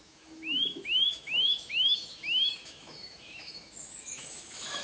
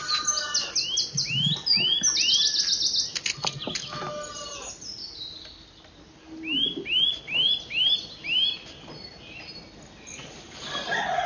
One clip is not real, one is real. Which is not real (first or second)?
first